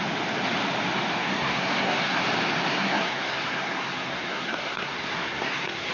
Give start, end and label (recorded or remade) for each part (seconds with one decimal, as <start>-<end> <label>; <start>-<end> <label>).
0.0-1.2 recorded; 1.2-2.2 remade; 2.2-2.7 recorded; 2.7-5.9 remade